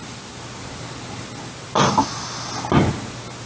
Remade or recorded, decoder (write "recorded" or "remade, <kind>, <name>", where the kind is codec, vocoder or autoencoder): recorded